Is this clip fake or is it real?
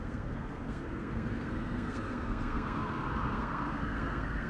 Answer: fake